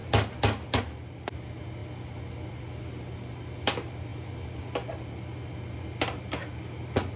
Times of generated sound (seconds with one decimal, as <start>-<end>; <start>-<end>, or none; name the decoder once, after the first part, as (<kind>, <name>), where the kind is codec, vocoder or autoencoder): none